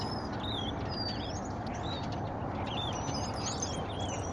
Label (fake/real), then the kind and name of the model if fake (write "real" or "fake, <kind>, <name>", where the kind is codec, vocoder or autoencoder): real